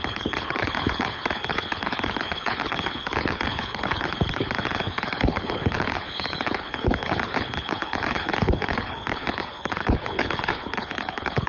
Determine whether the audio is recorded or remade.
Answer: remade